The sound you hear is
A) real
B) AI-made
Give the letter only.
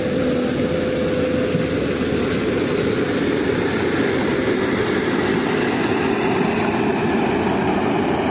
A